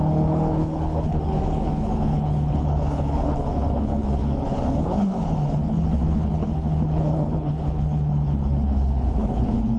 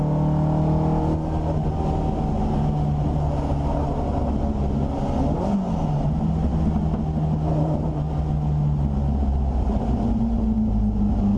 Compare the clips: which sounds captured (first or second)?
second